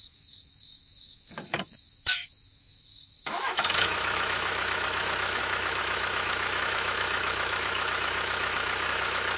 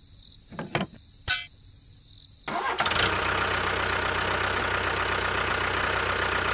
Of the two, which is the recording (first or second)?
second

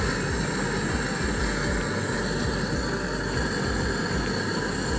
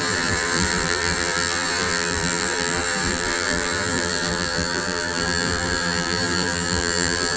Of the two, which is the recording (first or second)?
first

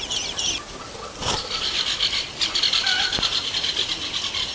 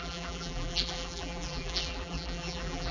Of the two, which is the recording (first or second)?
first